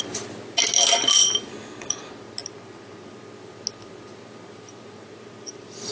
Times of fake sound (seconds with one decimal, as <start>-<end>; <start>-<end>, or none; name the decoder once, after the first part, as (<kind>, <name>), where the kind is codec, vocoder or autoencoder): 1.5-2.1 (codec, DAC)